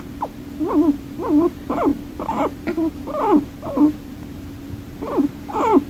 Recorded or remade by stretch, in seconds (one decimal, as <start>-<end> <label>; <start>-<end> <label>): 0.0-5.9 remade